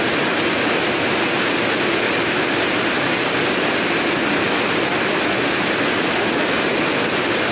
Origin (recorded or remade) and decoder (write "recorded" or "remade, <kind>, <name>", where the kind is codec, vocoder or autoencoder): recorded